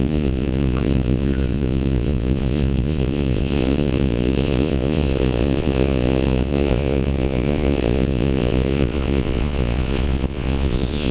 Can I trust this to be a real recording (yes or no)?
no